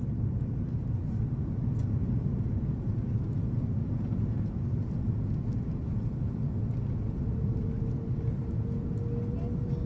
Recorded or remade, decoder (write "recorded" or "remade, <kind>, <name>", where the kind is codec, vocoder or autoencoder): recorded